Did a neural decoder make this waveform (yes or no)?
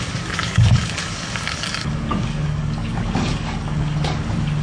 yes